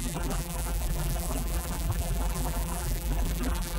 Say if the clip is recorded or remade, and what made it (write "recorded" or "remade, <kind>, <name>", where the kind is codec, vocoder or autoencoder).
remade, vocoder, BigVGAN v2